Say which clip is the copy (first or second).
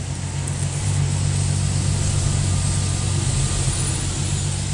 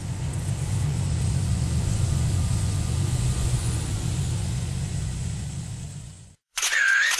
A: second